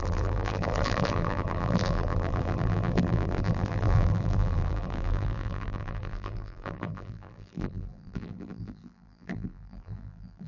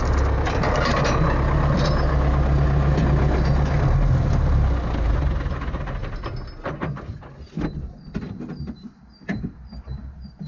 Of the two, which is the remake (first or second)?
first